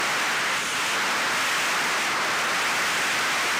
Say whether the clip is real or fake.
real